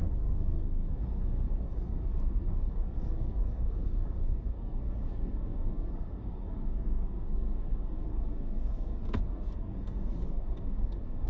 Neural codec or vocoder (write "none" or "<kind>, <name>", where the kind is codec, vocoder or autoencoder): codec, SNAC